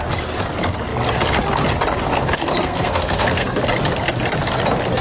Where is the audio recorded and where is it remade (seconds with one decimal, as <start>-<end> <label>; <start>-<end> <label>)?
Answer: 0.0-2.4 recorded; 2.4-3.6 remade; 3.6-5.0 recorded